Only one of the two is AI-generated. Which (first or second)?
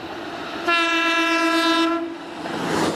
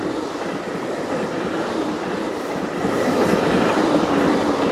second